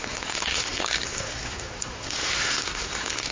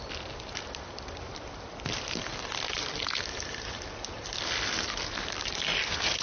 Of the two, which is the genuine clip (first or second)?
second